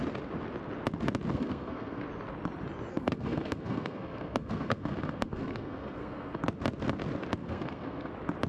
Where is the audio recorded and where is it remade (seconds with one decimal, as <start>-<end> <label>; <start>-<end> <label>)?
0.0-1.3 recorded; 1.3-2.0 remade; 2.0-2.9 recorded; 2.9-6.4 remade; 6.4-7.4 recorded; 7.4-8.1 remade; 8.1-8.5 recorded

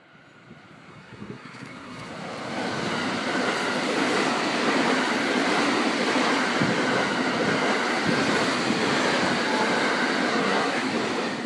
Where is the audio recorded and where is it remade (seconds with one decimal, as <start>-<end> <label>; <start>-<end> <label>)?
0.0-0.9 recorded; 0.9-2.1 remade; 2.1-10.3 recorded; 10.3-10.9 remade; 10.9-11.5 recorded

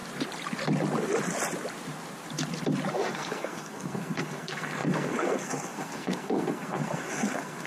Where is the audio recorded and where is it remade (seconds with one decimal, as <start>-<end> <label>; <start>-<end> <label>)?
0.0-2.9 recorded; 2.9-7.7 remade

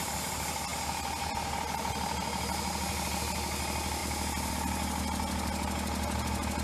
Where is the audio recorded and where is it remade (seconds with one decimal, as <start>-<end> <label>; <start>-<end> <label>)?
0.0-6.6 recorded

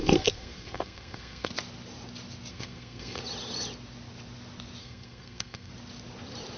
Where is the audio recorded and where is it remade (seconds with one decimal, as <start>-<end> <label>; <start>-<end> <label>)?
0.0-1.5 remade; 1.5-2.5 recorded; 2.5-3.2 remade; 3.2-4.8 recorded; 4.8-5.7 remade; 5.7-6.6 recorded

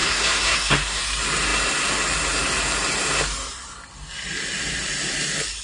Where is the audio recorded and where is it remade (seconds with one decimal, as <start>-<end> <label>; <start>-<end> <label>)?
0.0-1.0 remade; 1.0-5.6 recorded

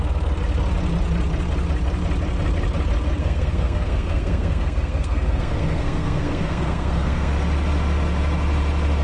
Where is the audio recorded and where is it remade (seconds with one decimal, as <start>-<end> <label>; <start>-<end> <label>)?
0.0-3.2 recorded; 3.2-7.3 remade; 7.3-9.0 recorded